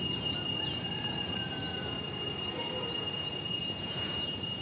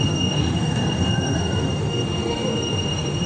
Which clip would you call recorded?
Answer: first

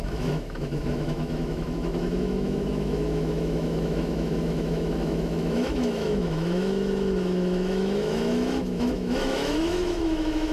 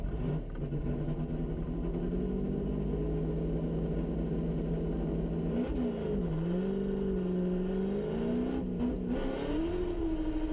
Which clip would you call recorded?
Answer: second